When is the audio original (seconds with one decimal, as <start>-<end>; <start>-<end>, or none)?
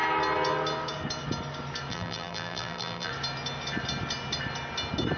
0.0-1.9; 3.1-5.2